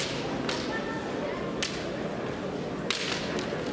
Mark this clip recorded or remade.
recorded